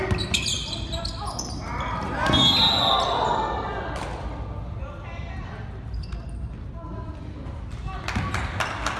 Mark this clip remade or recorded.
recorded